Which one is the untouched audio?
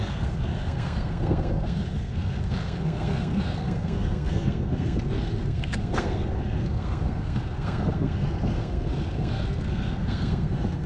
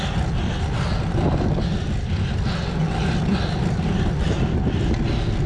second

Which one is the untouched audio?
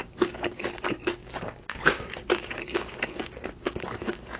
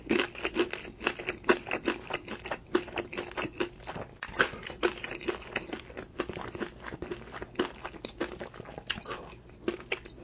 second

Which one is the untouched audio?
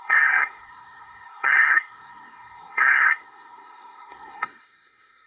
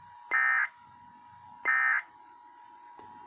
second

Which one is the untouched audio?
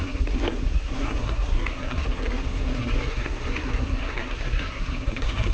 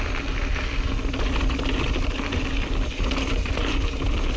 second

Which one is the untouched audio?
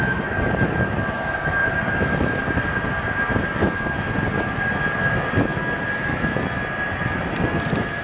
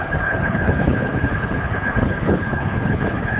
first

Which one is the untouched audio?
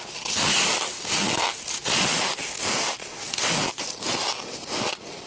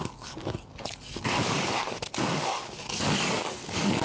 first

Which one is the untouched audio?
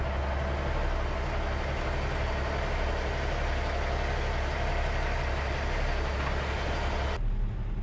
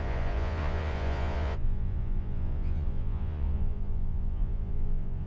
first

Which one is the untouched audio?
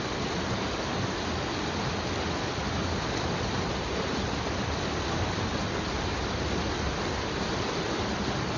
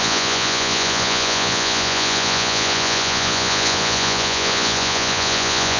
first